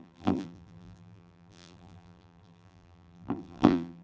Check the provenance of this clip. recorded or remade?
remade